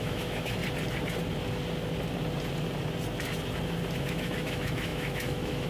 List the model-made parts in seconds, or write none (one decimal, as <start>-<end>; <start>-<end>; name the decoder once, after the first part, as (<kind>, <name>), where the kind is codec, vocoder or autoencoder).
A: 0.0-0.6 (autoencoder, DAC-VAE); 4.0-5.7